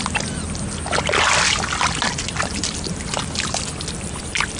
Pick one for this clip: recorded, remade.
recorded